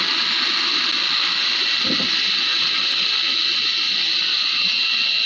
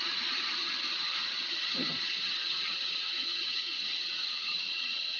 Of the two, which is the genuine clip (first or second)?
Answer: first